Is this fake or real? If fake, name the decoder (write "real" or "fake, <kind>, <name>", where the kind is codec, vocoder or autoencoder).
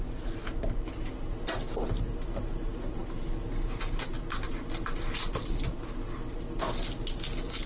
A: real